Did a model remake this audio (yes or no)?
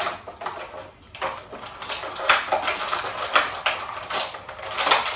no